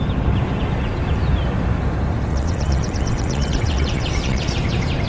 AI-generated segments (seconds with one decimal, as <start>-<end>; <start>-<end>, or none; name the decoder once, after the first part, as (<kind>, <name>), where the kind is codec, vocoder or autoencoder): 2.3-4.5 (vocoder, WaveNeXt)